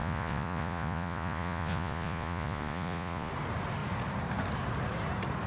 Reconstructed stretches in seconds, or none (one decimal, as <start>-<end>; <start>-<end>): 0.0-3.3